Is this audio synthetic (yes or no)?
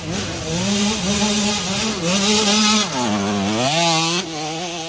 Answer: no